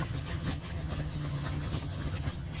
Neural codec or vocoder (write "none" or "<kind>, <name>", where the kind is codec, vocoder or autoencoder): vocoder, HiFi-GAN